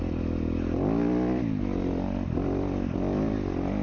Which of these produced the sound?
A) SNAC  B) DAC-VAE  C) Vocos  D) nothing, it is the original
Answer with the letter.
D